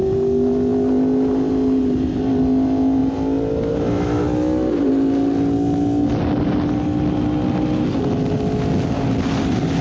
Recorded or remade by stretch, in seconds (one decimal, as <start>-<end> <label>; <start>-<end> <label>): 0.0-9.8 recorded

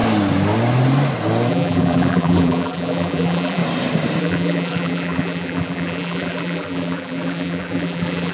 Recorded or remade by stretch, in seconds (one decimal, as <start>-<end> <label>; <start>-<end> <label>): 0.0-1.5 recorded; 1.5-3.6 remade; 3.6-4.2 recorded; 4.2-8.3 remade

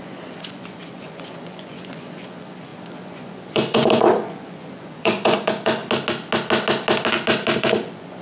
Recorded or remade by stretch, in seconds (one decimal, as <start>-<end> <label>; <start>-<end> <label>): 0.0-5.8 remade; 5.8-7.6 recorded; 7.6-8.2 remade

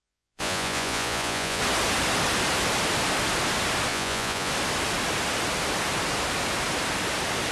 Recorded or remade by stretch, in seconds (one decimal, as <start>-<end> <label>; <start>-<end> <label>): 0.0-1.6 remade; 1.6-3.9 recorded; 3.9-4.5 remade; 4.5-7.5 recorded

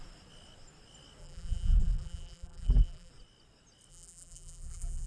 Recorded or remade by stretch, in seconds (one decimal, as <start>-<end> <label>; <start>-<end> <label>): 0.0-1.2 recorded; 1.2-3.1 remade; 3.1-3.9 recorded; 3.9-5.1 remade

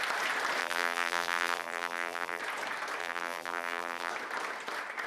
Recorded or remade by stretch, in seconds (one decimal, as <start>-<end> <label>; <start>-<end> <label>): 0.0-0.6 recorded; 0.6-2.4 remade; 2.4-3.0 recorded; 3.0-4.1 remade; 4.1-5.1 recorded